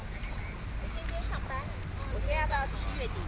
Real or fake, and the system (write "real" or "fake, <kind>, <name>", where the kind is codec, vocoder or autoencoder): real